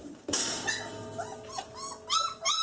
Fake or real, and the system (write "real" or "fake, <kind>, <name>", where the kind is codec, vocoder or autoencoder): real